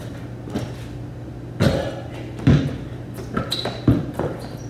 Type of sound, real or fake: real